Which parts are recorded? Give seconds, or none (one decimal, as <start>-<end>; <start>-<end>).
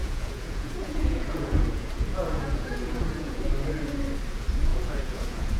3.4-4.7